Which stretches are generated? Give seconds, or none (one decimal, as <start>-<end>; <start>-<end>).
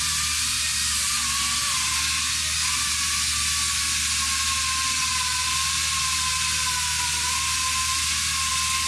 none